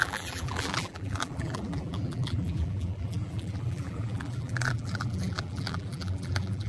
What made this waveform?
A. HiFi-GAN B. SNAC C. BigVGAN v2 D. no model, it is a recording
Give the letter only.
C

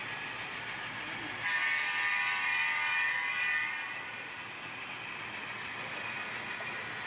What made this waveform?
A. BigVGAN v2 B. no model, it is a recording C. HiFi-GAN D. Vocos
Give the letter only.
B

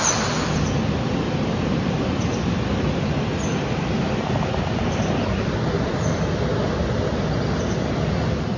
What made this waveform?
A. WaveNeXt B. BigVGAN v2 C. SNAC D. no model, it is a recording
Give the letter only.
D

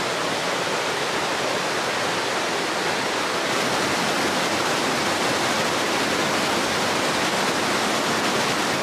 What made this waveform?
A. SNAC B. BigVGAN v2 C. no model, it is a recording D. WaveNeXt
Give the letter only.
C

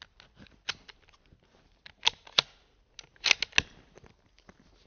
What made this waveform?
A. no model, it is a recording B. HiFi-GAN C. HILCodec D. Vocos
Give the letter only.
A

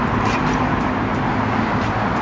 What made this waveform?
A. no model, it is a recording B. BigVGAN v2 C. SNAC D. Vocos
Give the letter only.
A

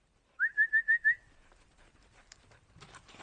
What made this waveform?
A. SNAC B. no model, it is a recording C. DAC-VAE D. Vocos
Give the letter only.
B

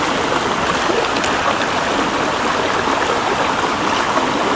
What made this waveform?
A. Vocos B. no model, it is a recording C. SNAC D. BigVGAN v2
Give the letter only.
B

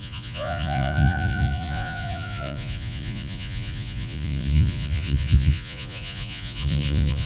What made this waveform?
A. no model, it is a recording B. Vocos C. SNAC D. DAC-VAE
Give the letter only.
B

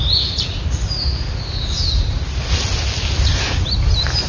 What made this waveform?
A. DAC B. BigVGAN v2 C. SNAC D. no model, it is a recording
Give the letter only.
D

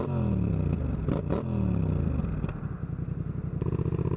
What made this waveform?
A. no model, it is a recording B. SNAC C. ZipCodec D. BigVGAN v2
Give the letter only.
A